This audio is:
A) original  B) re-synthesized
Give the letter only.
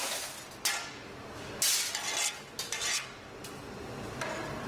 A